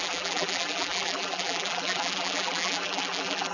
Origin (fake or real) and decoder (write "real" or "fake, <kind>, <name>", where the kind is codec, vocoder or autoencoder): fake, vocoder, BigVGAN v2